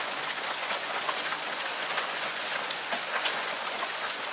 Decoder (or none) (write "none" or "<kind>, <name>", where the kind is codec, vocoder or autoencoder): vocoder, Vocos